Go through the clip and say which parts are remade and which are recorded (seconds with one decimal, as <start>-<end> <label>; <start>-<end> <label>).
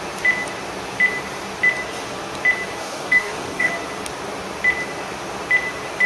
0.0-2.8 recorded; 2.8-3.7 remade; 3.7-6.1 recorded